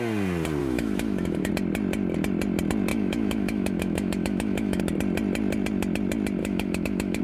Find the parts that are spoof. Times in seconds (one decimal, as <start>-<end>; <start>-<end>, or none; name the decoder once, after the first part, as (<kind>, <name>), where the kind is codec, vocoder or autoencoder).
0.6-1.5 (autoencoder, DAC-VAE); 2.9-4.8; 6.4-7.2